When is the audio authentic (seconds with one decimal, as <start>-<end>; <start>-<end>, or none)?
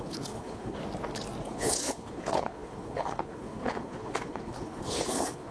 0.8-1.4